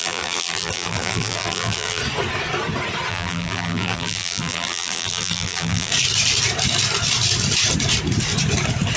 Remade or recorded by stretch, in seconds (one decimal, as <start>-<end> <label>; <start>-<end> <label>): 0.0-2.0 remade; 2.0-3.1 recorded; 3.1-5.9 remade; 5.9-9.0 recorded